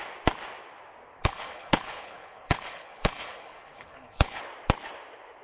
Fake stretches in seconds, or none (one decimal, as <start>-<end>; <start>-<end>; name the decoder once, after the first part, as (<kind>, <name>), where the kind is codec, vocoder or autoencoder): 1.2-4.4 (codec, HILCodec)